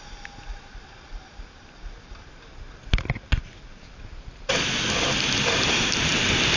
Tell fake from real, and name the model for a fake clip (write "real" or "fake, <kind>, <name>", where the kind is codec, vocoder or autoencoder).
real